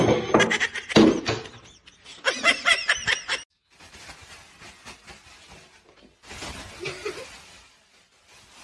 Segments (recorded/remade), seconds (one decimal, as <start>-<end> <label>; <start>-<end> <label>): 0.0-8.6 recorded